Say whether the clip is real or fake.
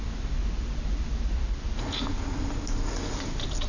real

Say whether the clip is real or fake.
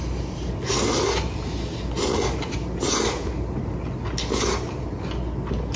real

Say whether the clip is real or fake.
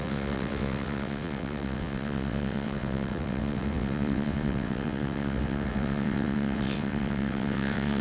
fake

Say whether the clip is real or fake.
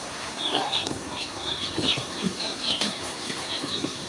fake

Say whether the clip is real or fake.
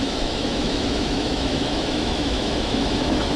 fake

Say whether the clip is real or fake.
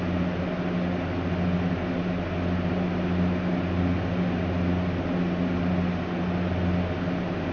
real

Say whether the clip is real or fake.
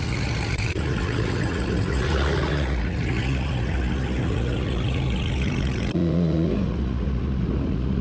fake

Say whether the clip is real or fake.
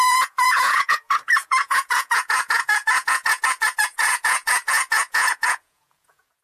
fake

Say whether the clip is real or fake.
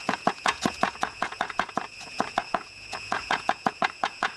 fake